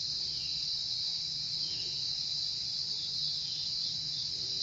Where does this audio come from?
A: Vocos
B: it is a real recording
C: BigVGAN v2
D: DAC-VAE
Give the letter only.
B